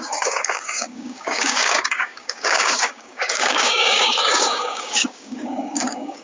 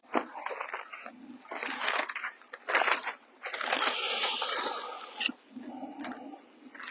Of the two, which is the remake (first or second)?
first